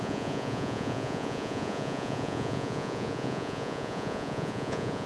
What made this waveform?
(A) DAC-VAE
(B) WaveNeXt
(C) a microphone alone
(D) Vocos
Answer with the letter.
D